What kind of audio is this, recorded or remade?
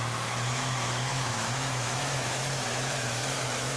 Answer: remade